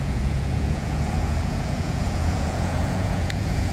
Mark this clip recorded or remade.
remade